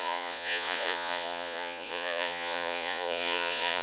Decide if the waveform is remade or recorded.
remade